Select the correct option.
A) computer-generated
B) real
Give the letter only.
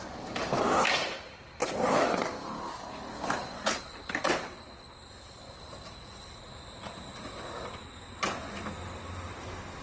B